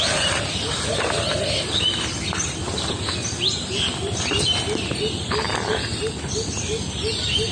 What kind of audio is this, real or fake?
real